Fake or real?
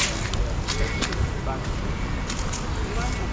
real